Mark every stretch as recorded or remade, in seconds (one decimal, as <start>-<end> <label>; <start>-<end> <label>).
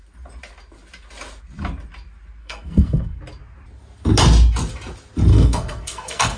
0.0-2.4 recorded; 2.4-3.2 remade; 3.2-5.3 recorded; 5.3-6.4 remade